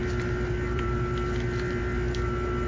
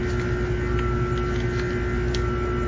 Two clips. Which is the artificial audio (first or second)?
first